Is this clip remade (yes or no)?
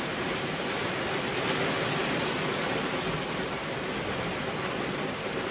no